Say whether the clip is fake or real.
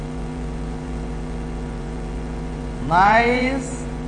fake